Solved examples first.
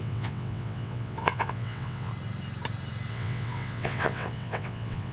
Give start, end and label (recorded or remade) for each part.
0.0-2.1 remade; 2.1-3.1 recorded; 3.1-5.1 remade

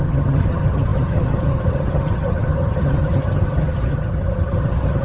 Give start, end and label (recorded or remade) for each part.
0.0-5.0 remade

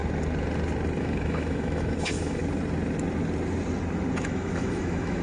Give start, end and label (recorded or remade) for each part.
0.0-1.0 recorded; 1.0-2.4 remade; 2.4-4.2 recorded; 4.2-5.2 remade

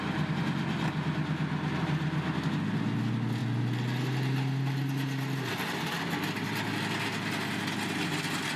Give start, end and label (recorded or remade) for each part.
0.0-8.6 recorded

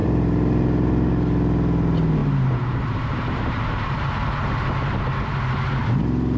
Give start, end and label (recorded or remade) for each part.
0.0-1.1 remade; 1.1-2.2 recorded; 2.2-4.1 remade; 4.1-6.4 recorded

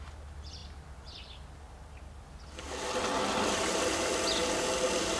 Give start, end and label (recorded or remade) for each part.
0.0-5.2 recorded

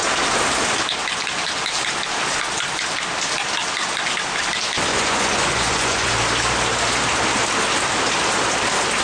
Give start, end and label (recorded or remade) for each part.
0.0-4.9 recorded; 4.9-6.1 remade; 6.1-9.0 recorded